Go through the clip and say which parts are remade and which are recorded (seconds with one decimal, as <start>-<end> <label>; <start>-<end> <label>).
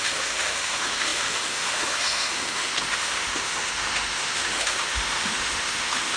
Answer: 0.0-6.2 remade